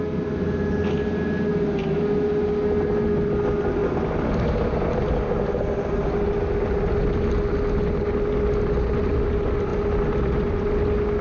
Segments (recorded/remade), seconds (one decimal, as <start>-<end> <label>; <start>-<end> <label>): 0.0-11.2 recorded